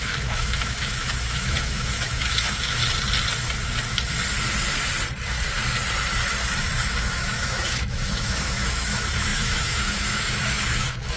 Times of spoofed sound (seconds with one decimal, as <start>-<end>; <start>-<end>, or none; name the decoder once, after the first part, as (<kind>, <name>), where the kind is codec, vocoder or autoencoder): 0.0-2.8 (autoencoder, DAC-VAE); 6.6-11.2